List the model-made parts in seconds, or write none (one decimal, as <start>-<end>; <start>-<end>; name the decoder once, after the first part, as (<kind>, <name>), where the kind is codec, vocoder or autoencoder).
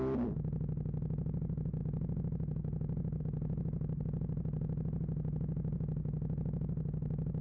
none